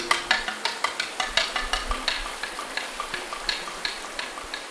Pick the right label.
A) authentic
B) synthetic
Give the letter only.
A